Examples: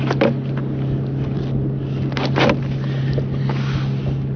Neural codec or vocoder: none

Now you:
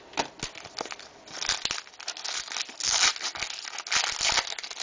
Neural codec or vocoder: none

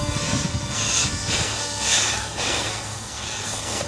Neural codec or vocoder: codec, SNAC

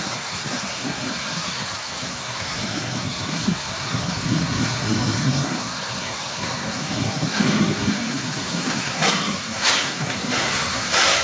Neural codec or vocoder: codec, SNAC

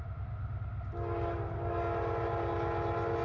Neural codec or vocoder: none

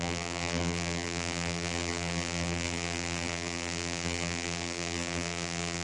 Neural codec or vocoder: vocoder, BigVGAN v2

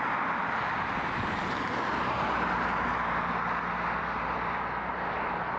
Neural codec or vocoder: none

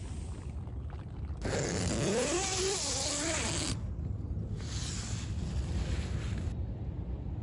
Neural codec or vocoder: none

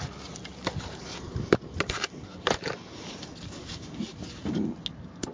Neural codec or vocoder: none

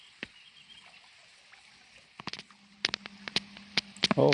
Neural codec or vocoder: none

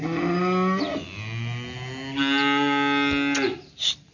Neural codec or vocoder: none